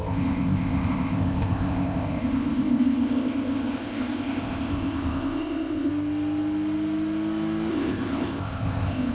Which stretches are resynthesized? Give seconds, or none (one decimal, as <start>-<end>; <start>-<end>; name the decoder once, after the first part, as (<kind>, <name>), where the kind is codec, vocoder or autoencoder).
0.0-5.9 (codec, ZipCodec); 7.7-9.1